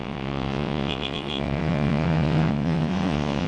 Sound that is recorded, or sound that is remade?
remade